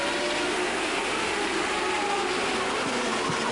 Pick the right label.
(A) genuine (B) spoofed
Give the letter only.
A